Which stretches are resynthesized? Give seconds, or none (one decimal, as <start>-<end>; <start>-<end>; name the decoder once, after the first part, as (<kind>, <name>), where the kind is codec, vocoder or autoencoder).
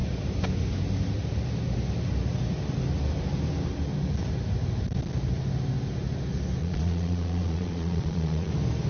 6.6-8.5 (vocoder, Vocos)